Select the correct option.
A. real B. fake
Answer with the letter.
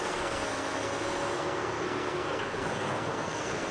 B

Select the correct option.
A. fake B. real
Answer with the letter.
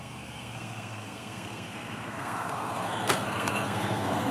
A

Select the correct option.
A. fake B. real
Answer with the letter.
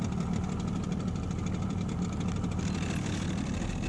B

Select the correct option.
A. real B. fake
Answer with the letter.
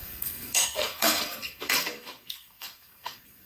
B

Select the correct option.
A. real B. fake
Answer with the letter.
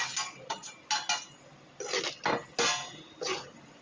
A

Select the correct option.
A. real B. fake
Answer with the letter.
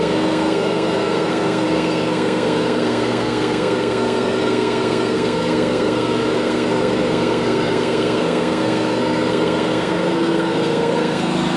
B